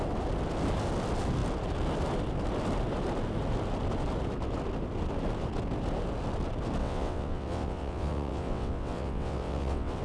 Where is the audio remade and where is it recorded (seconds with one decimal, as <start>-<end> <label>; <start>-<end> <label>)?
0.0-6.8 recorded; 6.8-10.0 remade